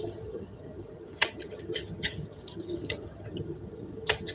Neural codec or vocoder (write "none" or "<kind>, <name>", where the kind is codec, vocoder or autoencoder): vocoder, HiFi-GAN